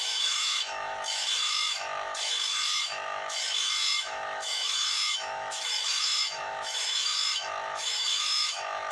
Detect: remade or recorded remade